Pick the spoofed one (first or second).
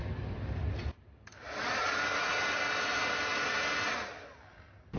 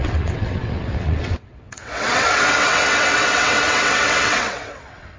second